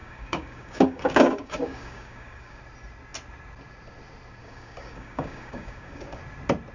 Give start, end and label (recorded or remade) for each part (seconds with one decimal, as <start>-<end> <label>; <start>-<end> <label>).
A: 0.0-2.6 remade; 2.6-4.4 recorded; 4.4-6.2 remade; 6.2-6.7 recorded